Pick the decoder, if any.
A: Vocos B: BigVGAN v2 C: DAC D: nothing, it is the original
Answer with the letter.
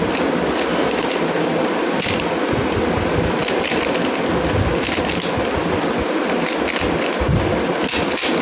D